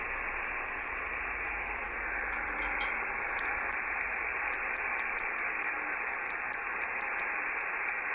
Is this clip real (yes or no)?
no